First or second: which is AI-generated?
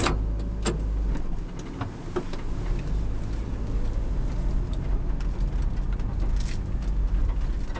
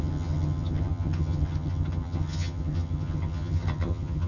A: second